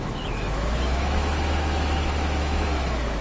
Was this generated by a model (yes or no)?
yes